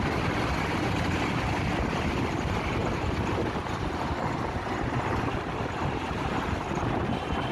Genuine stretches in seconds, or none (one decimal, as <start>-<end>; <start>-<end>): 0.0-7.5